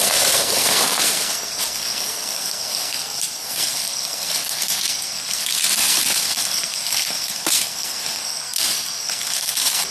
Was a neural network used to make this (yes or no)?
yes